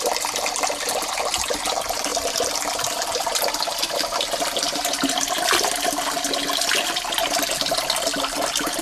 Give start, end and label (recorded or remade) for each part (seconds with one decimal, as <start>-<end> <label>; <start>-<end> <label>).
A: 0.0-8.8 recorded